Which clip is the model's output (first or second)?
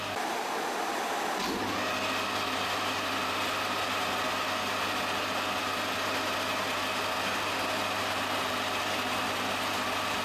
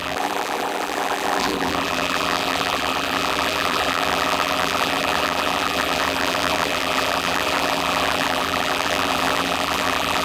second